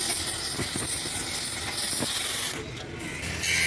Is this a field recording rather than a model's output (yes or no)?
yes